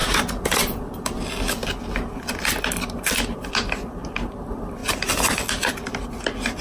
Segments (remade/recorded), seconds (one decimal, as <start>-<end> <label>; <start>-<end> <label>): 0.0-6.6 recorded